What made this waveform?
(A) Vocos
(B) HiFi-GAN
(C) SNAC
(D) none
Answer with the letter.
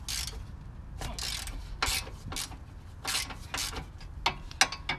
D